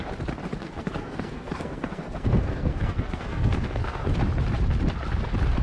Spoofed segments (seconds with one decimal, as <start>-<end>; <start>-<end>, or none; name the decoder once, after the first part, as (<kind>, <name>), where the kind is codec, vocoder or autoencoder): 0.6-4.0 (codec, SNAC)